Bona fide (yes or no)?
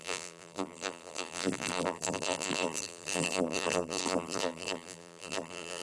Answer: no